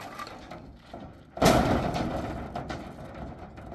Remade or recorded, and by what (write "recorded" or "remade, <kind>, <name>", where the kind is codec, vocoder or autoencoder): recorded